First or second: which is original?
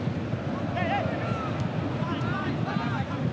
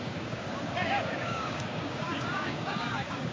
first